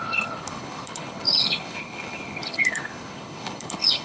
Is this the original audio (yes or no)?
no